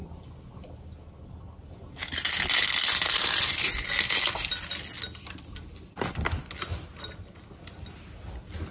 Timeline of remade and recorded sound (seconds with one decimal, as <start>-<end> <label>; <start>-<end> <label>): 0.0-8.7 recorded